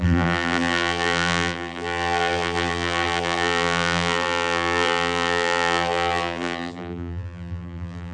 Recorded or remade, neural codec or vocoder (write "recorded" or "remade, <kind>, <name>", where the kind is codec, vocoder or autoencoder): remade, vocoder, BigVGAN v2